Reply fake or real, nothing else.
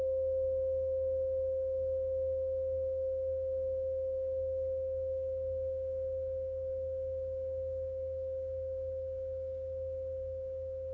fake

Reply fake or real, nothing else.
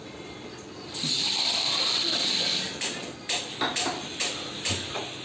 fake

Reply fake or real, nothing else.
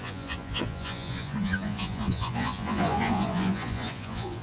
fake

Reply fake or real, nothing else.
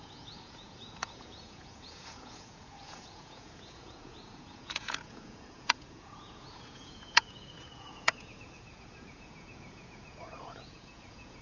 fake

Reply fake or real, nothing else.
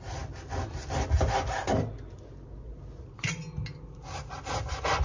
real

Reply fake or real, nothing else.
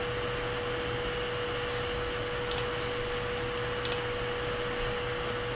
real